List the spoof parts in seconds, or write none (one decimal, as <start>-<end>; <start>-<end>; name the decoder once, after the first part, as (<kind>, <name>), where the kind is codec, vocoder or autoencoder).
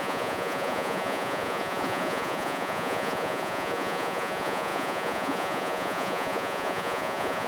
0.0-7.5 (vocoder, Vocos)